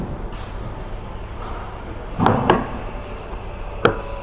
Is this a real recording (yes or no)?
yes